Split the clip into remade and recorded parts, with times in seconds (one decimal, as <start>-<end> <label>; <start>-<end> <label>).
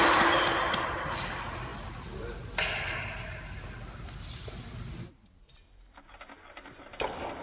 0.0-7.4 recorded